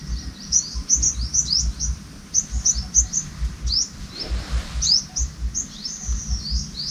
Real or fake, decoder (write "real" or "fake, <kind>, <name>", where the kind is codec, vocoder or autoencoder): real